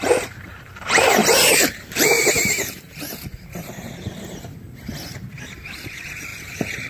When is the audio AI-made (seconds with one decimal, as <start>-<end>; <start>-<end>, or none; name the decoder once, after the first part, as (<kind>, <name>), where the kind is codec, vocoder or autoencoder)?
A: 1.2-2.9 (vocoder, BigVGAN v2); 3.3-4.1